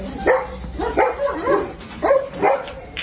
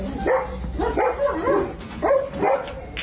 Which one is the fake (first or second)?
first